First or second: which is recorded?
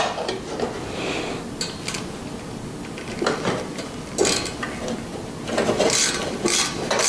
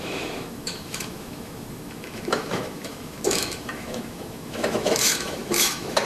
first